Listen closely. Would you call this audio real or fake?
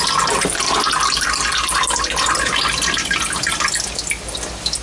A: real